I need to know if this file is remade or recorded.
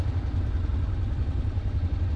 recorded